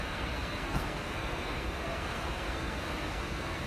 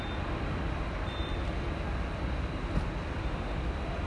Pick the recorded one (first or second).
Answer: second